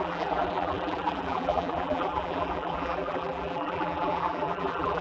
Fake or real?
fake